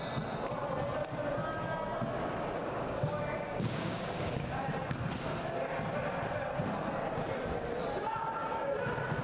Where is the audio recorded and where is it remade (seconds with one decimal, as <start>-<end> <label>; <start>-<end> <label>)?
0.0-2.6 recorded; 2.6-4.7 remade; 4.7-9.2 recorded